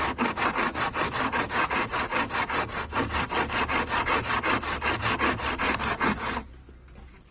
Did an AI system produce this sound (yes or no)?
no